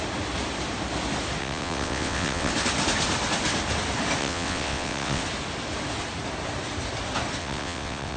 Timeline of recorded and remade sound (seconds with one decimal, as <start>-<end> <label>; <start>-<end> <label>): 0.0-1.4 recorded; 1.4-2.5 remade; 2.5-4.2 recorded; 4.2-5.2 remade; 5.2-7.4 recorded; 7.4-8.2 remade